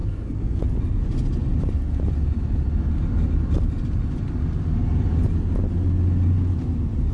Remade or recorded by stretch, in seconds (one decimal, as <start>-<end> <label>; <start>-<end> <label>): 0.0-0.6 remade; 0.6-7.1 recorded